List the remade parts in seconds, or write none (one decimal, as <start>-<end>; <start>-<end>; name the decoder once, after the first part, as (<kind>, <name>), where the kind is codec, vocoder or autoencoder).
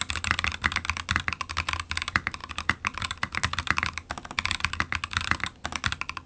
none